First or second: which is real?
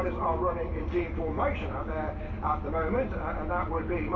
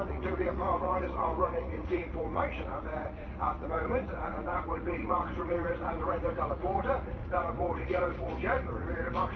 first